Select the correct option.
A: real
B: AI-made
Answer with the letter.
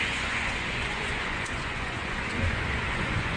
B